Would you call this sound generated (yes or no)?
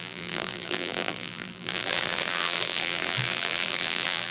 yes